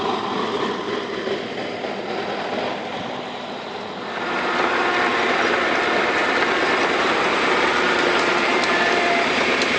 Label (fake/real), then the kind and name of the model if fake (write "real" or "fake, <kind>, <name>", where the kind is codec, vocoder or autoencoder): real